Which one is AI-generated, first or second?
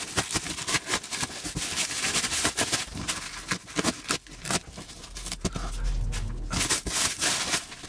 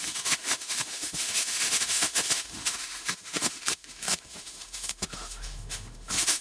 second